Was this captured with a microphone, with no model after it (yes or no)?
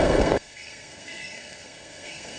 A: no